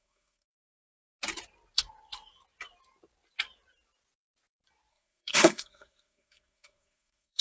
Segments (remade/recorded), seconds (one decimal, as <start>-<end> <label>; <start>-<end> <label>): 0.0-0.5 remade; 0.5-4.9 recorded; 4.9-7.4 remade